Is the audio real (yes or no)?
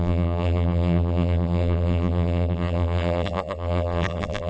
no